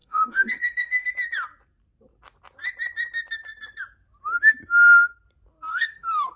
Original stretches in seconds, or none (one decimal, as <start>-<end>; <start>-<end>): 1.1-5.7